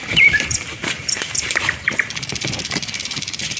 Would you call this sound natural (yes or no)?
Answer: no